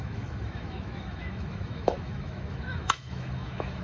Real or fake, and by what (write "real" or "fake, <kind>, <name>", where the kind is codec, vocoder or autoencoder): fake, autoencoder, DAC-VAE